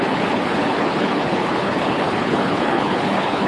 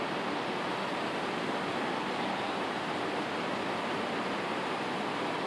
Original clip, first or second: second